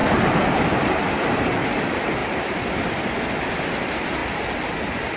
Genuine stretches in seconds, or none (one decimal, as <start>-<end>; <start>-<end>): 1.3-2.2; 3.6-4.2; 4.7-5.2